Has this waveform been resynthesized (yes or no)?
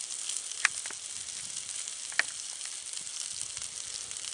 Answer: no